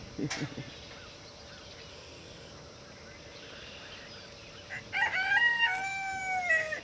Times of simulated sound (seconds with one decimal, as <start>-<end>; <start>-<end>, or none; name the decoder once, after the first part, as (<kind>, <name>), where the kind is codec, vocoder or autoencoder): 1.9-2.5 (codec, SNAC); 5.6-6.2